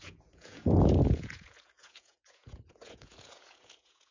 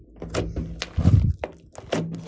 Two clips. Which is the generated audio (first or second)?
first